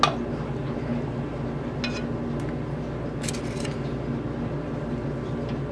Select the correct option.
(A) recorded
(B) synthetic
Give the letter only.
A